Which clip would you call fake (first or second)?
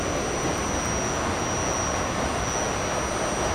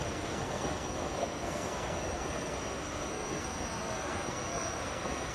second